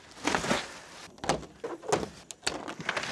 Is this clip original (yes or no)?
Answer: yes